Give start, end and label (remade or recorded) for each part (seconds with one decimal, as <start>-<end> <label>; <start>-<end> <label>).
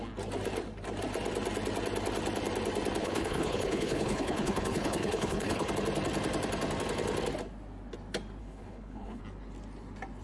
0.0-3.0 recorded; 3.0-5.7 remade; 5.7-8.4 recorded; 8.4-9.2 remade; 9.2-10.2 recorded